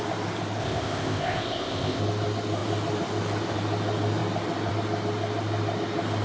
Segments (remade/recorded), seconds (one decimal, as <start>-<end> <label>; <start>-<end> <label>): 0.0-0.6 recorded; 0.6-2.0 remade; 2.0-6.2 recorded